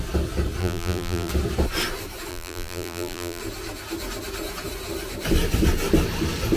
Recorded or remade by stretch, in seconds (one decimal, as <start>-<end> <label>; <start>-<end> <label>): 0.0-0.6 recorded; 0.6-1.3 remade; 1.3-2.3 recorded; 2.3-3.4 remade; 3.4-6.6 recorded